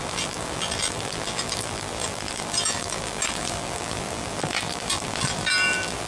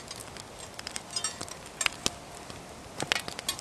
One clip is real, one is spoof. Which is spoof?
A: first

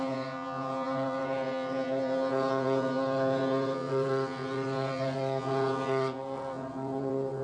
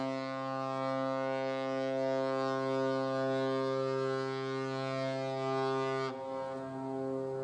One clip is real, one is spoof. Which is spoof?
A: first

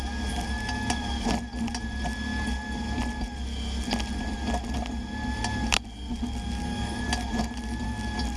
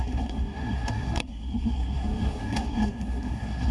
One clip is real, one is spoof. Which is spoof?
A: second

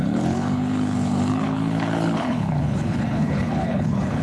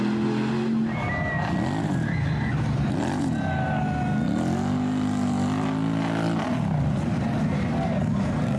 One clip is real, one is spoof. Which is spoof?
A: first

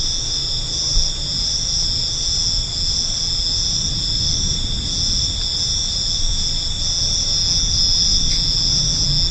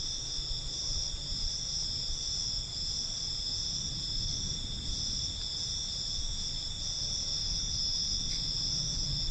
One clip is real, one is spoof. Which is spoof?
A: second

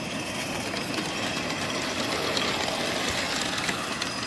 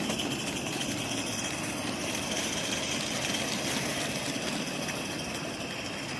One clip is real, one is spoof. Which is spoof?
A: first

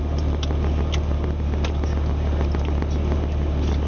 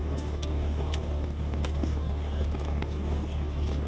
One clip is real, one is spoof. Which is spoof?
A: second